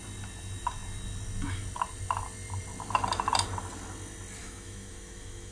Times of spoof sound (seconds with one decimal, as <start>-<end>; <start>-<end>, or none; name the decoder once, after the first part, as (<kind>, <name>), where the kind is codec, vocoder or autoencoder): 4.4-5.5 (autoencoder, DAC-VAE)